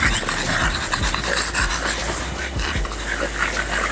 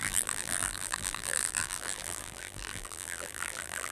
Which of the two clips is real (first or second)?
first